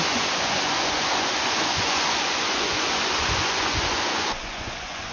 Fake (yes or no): yes